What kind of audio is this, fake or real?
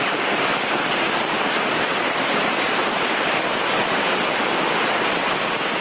real